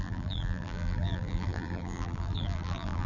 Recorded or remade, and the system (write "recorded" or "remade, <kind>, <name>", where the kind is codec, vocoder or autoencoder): remade, vocoder, BigVGAN v2